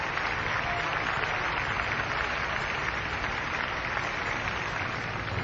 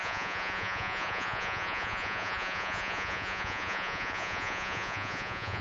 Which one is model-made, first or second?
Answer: second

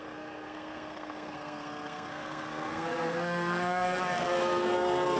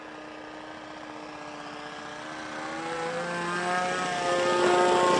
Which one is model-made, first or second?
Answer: first